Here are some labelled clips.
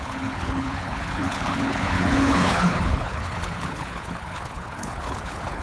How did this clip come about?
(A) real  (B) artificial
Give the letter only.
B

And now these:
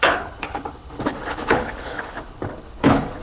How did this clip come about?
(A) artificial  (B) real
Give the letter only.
A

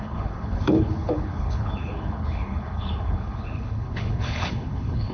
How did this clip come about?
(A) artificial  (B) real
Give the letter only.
A